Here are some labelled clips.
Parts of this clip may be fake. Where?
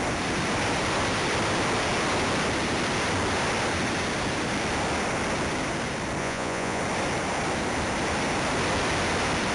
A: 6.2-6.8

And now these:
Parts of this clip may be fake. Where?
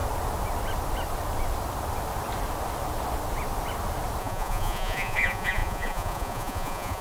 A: 4.2-7.0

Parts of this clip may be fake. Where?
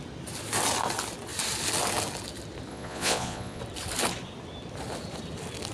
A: 2.7-3.6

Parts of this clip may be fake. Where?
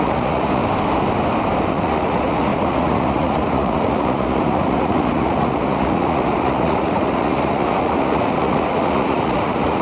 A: 0.0-0.6; 1.7-9.8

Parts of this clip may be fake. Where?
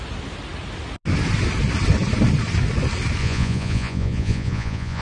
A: 3.2-5.0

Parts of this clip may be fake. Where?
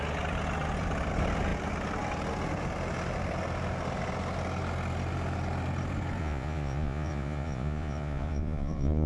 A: 6.2-9.1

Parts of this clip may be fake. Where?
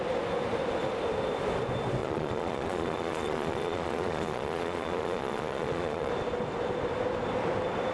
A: 2.0-6.1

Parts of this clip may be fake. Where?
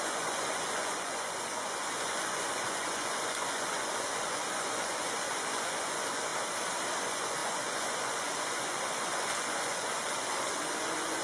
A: 0.0-6.3; 7.0-11.2